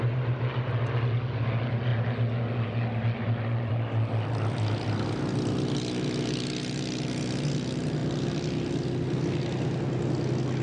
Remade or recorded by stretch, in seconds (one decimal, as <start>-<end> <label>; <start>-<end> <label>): 0.0-10.6 recorded